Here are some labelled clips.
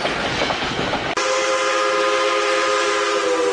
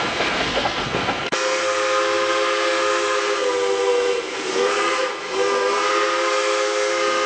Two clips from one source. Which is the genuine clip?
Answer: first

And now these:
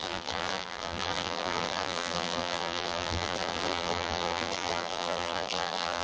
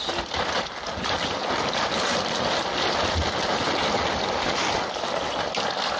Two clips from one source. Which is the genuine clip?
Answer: second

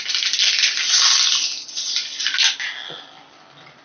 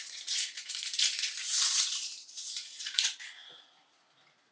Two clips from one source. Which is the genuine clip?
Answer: first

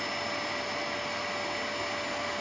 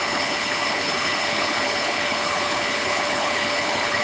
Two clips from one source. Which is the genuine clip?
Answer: first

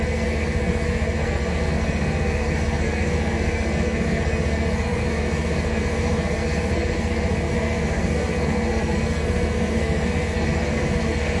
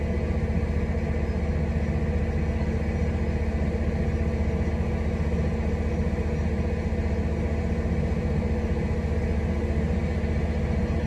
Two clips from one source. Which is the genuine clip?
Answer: second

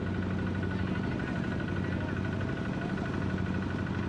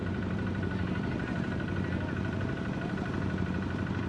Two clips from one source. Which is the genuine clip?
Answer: first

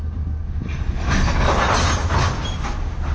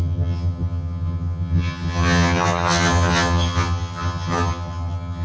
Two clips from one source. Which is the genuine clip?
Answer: first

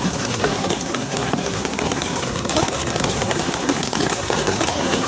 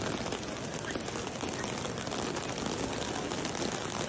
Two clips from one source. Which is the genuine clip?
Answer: second